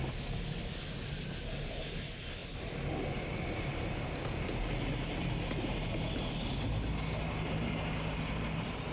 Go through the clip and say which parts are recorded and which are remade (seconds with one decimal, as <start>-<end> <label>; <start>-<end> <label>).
0.0-8.9 recorded